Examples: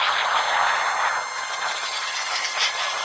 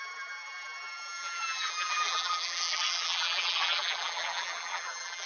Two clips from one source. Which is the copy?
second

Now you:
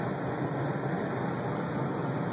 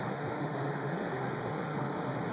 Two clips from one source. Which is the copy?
second